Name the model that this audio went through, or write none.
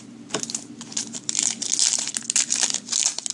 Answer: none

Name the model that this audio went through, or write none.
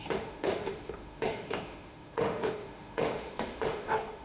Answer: autoencoder, DAC-VAE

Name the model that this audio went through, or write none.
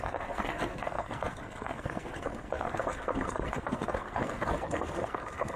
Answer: codec, SNAC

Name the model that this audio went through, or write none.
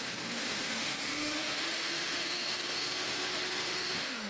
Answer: autoencoder, DAC-VAE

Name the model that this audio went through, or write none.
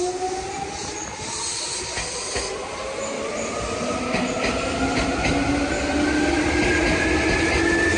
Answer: none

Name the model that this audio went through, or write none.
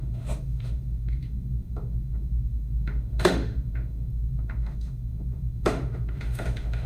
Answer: autoencoder, DAC-VAE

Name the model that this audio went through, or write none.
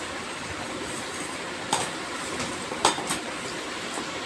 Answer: none